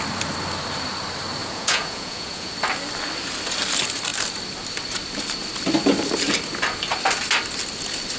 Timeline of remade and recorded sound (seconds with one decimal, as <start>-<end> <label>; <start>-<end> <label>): 0.0-1.4 recorded; 1.4-2.5 remade; 2.5-8.2 recorded